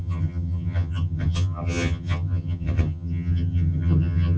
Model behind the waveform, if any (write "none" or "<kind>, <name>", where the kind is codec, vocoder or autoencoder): vocoder, HiFi-GAN